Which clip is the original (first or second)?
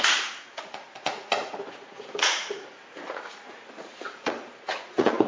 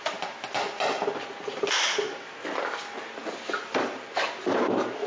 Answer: second